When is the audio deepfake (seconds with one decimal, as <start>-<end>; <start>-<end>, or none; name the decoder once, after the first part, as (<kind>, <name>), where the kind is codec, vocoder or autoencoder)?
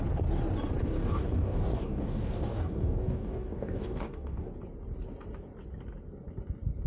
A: 0.8-4.5 (codec, DAC)